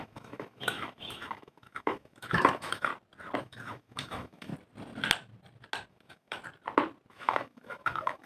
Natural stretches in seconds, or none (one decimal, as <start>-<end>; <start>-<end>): 2.9-3.4; 4.5-5.9; 6.4-7.1